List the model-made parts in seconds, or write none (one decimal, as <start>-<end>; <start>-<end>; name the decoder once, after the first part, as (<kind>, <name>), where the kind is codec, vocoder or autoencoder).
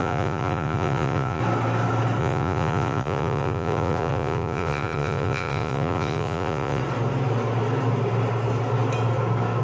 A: 0.0-1.4 (vocoder, Vocos); 2.2-6.8